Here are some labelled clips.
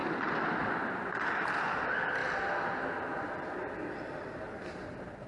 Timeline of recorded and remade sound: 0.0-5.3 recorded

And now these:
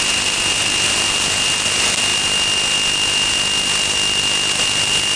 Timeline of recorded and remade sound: 0.0-5.2 recorded

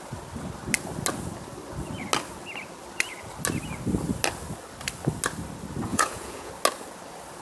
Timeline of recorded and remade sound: 0.0-5.9 recorded; 5.9-6.5 remade; 6.5-7.4 recorded